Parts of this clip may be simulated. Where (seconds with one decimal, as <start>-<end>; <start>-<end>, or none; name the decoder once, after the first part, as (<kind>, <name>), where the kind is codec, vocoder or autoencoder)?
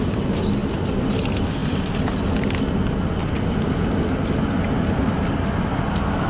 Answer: none